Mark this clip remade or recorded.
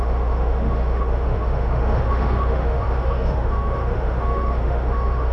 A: remade